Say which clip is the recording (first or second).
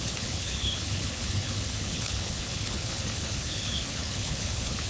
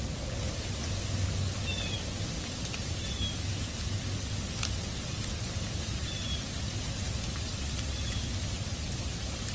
second